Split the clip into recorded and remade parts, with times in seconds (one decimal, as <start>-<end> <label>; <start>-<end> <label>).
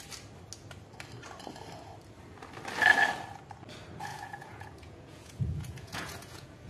0.0-4.1 recorded; 4.1-6.7 remade